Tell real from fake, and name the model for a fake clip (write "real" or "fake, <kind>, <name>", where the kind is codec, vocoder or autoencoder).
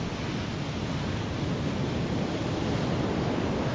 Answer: real